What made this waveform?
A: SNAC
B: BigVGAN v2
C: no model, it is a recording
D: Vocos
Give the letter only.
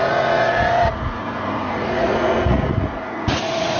D